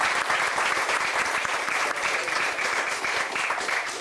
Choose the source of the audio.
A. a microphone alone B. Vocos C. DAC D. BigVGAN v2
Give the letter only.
D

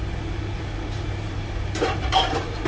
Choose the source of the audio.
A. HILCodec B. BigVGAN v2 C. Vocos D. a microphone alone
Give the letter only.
B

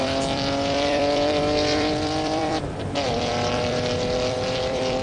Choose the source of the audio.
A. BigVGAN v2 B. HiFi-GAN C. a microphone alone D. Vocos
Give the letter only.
A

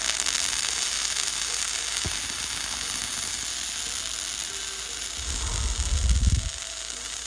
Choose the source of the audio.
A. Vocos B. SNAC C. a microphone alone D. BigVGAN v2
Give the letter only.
C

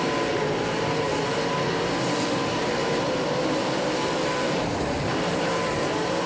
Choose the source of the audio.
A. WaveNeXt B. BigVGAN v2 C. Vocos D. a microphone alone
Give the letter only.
B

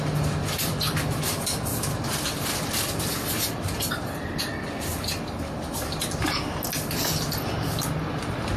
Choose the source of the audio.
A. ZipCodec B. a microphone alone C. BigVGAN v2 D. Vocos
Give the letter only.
B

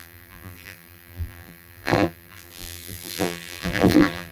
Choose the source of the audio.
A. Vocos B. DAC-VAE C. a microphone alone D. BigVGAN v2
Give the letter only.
D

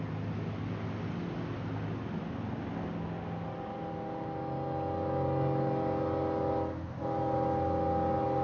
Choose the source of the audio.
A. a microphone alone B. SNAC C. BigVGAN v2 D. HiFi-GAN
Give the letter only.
A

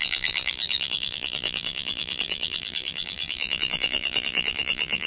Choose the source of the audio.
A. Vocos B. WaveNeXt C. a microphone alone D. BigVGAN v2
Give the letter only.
D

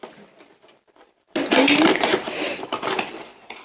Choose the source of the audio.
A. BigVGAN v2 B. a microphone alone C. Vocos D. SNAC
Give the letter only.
B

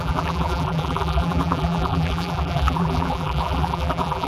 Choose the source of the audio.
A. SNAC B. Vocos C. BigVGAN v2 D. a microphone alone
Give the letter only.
C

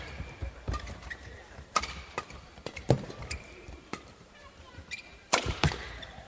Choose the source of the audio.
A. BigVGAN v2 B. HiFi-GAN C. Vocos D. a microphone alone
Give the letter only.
A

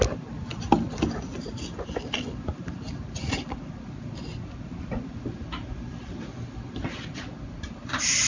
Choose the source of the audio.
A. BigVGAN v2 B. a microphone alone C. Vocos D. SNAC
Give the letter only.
A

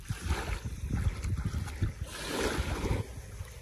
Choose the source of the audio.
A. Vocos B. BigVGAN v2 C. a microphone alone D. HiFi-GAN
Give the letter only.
C